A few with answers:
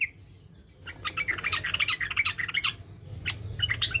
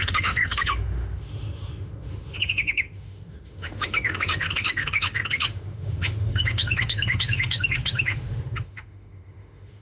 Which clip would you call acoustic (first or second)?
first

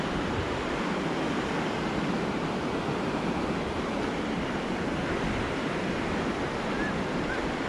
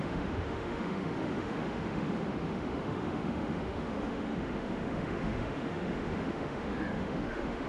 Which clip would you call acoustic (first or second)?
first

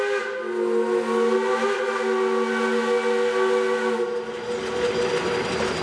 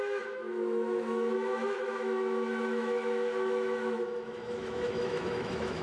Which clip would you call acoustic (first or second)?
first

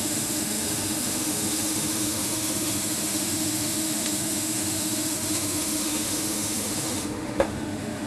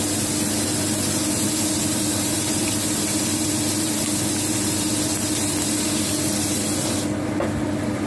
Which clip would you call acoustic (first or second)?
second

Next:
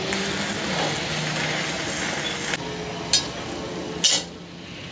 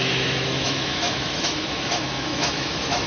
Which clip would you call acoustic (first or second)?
first